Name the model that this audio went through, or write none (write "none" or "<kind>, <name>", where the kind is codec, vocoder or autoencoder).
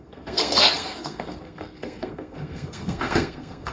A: codec, SNAC